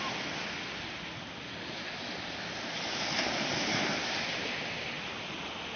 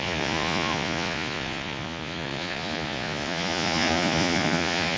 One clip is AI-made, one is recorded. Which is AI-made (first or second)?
second